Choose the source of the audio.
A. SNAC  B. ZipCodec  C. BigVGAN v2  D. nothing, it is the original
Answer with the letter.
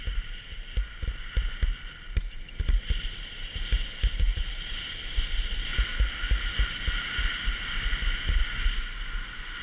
D